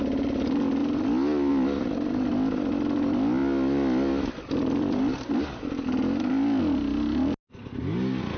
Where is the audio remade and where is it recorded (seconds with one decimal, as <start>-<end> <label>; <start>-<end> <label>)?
0.0-8.4 recorded